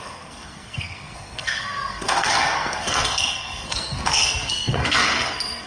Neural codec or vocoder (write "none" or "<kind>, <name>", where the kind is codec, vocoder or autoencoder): codec, SNAC